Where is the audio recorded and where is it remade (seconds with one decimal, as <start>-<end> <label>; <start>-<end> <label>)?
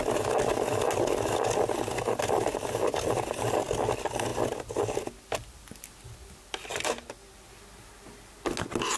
0.0-9.0 recorded